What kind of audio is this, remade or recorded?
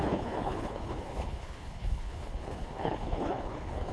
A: remade